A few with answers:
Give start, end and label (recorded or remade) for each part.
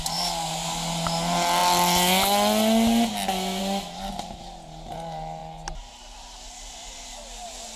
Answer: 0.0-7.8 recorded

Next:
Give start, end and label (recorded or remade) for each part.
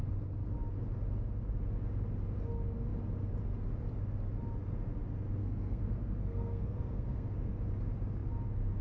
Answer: 0.0-5.4 recorded; 5.4-7.5 remade; 7.5-8.8 recorded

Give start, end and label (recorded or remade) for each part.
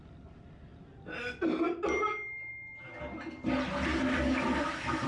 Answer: 0.0-5.1 recorded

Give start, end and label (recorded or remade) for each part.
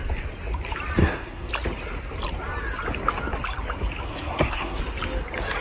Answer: 0.0-1.0 recorded; 1.0-1.5 remade; 1.5-4.1 recorded; 4.1-4.8 remade; 4.8-5.6 recorded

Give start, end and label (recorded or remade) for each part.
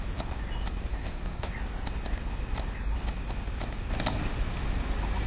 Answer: 0.0-0.9 recorded; 0.9-1.5 remade; 1.5-5.3 recorded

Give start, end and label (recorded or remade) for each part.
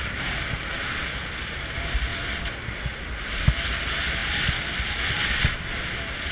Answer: 0.0-6.3 recorded